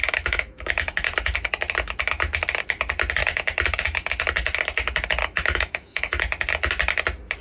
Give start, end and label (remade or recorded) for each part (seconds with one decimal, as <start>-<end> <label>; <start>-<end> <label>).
0.0-0.7 remade; 0.7-5.2 recorded; 5.2-6.2 remade; 6.2-7.4 recorded